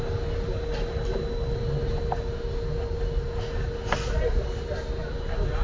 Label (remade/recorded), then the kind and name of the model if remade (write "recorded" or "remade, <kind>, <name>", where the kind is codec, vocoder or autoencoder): recorded